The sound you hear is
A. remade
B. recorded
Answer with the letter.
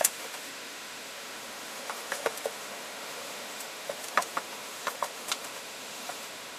A